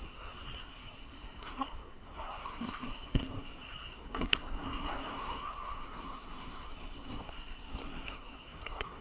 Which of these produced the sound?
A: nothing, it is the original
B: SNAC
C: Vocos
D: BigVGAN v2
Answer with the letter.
B